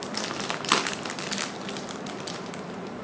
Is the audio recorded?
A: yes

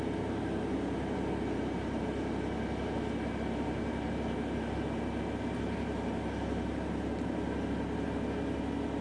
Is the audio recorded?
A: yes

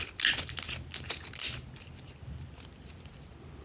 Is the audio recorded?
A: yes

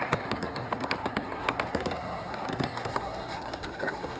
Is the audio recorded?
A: no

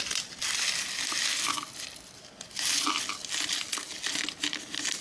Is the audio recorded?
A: yes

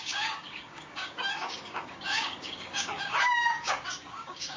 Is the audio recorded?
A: no